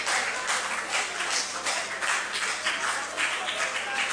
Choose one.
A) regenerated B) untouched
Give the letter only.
B